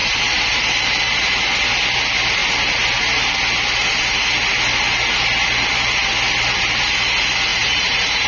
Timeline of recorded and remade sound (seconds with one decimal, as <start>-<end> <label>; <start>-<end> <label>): 0.0-0.8 remade; 0.8-7.5 recorded; 7.5-8.3 remade